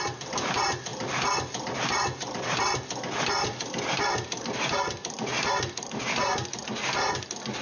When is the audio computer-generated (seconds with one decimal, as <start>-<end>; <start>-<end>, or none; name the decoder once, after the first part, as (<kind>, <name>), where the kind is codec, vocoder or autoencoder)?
none